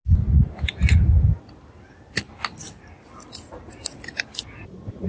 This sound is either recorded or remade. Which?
recorded